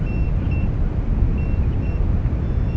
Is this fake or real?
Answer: real